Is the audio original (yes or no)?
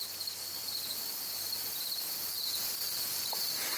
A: yes